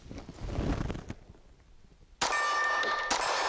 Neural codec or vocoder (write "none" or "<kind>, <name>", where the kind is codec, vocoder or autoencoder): none